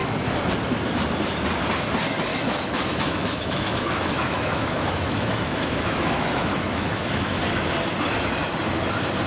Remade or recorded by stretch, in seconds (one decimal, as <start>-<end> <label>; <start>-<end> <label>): 0.0-2.3 recorded; 2.3-7.4 remade; 7.4-9.3 recorded